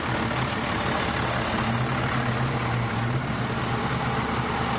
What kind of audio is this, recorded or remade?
recorded